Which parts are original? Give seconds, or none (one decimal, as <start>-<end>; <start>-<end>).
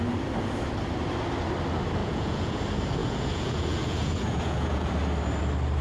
0.0-2.0; 2.6-3.0; 4.9-5.8